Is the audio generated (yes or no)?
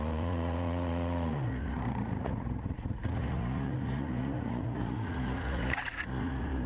yes